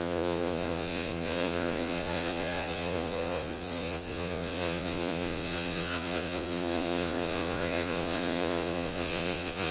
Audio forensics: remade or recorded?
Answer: remade